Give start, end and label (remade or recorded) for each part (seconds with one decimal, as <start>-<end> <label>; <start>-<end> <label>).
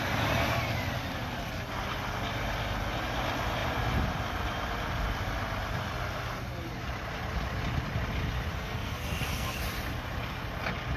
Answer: 0.0-8.5 recorded; 8.5-9.5 remade; 9.5-11.0 recorded